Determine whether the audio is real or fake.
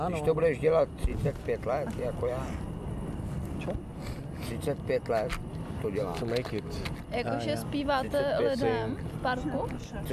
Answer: real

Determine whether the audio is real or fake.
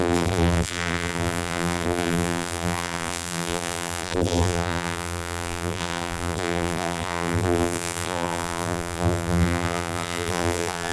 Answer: fake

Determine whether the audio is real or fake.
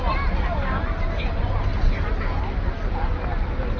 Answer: real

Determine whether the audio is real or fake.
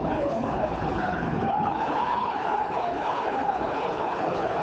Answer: fake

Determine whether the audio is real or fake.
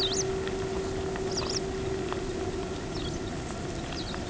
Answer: real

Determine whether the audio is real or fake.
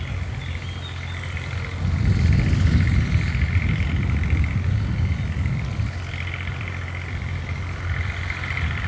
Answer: real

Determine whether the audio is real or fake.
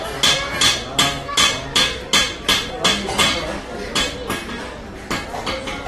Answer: real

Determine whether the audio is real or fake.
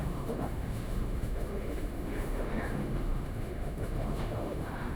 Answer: fake